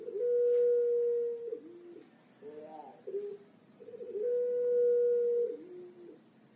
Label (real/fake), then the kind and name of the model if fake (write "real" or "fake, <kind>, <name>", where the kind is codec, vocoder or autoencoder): real